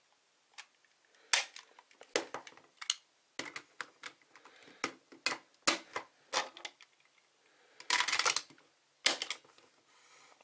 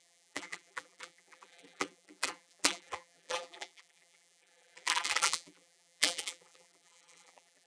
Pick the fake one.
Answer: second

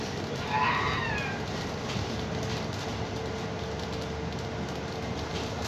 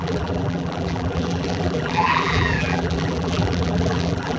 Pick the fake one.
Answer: second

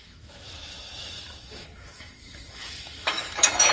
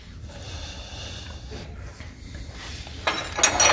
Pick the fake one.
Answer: first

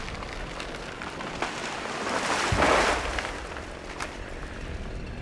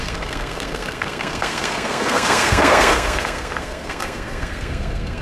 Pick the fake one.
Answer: second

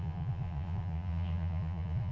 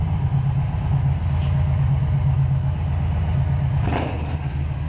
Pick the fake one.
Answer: first